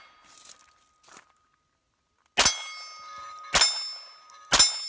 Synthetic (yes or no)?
no